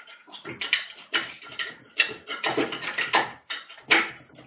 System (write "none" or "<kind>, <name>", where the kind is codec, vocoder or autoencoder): none